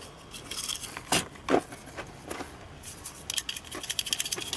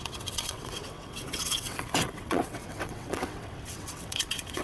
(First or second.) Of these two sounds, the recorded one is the first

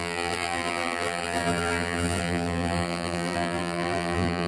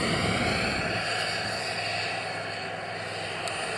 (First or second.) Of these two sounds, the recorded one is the second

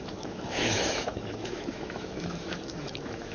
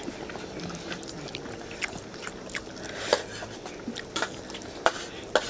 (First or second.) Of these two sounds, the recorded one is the second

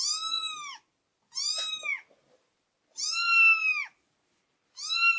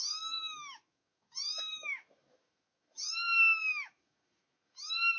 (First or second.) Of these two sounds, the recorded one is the first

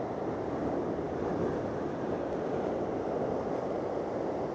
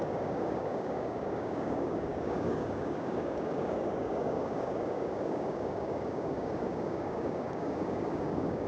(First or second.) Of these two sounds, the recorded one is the first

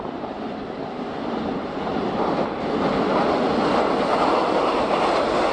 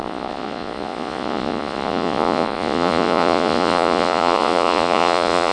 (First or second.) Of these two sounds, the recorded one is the first